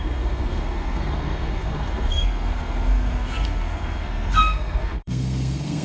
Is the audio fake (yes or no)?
yes